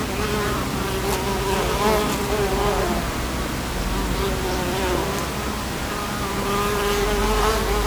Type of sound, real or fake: real